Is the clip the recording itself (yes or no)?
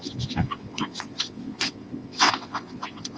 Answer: no